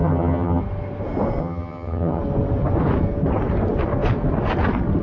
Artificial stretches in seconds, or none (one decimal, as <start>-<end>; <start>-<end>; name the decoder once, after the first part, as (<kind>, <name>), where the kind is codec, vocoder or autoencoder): 0.0-0.6 (vocoder, HiFi-GAN); 1.4-2.2